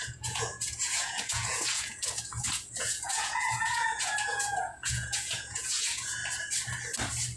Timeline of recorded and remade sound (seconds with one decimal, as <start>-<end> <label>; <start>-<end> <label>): 0.0-6.2 remade; 6.2-7.4 recorded